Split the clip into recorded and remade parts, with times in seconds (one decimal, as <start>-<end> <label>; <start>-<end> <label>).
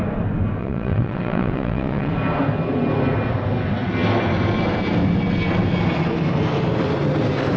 0.0-0.6 recorded; 0.6-2.1 remade; 2.1-7.6 recorded